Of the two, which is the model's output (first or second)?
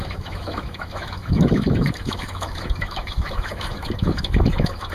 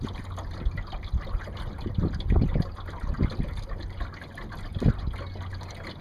first